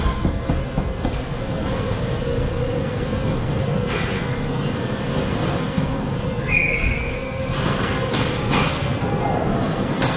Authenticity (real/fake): fake